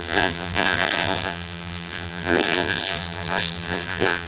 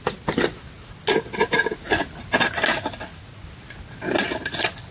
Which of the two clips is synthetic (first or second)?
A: first